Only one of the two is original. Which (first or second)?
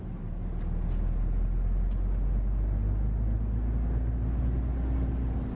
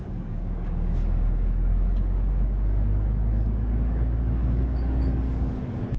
first